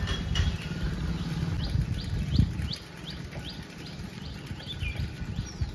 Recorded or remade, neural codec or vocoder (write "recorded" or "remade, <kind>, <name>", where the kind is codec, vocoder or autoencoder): recorded